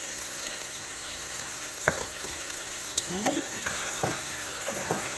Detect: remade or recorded remade